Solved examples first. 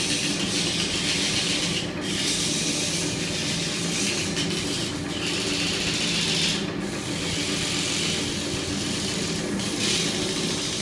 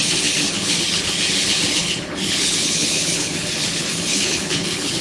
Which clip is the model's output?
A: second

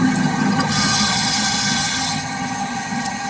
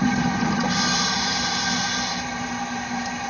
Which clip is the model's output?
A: first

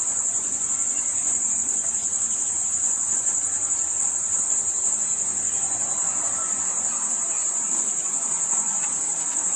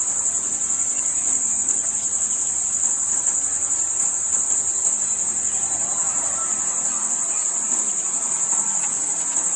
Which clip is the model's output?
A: first